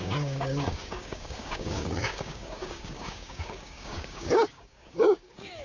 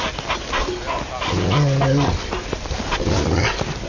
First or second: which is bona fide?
second